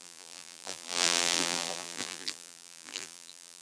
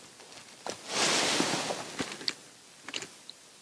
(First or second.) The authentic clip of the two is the second